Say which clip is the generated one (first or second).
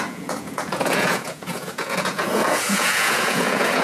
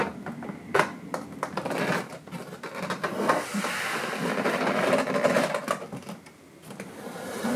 first